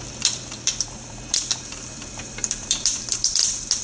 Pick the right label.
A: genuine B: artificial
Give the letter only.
B